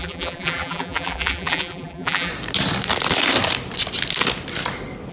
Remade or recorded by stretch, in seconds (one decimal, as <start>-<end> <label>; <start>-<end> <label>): 0.0-2.3 remade; 2.3-5.1 recorded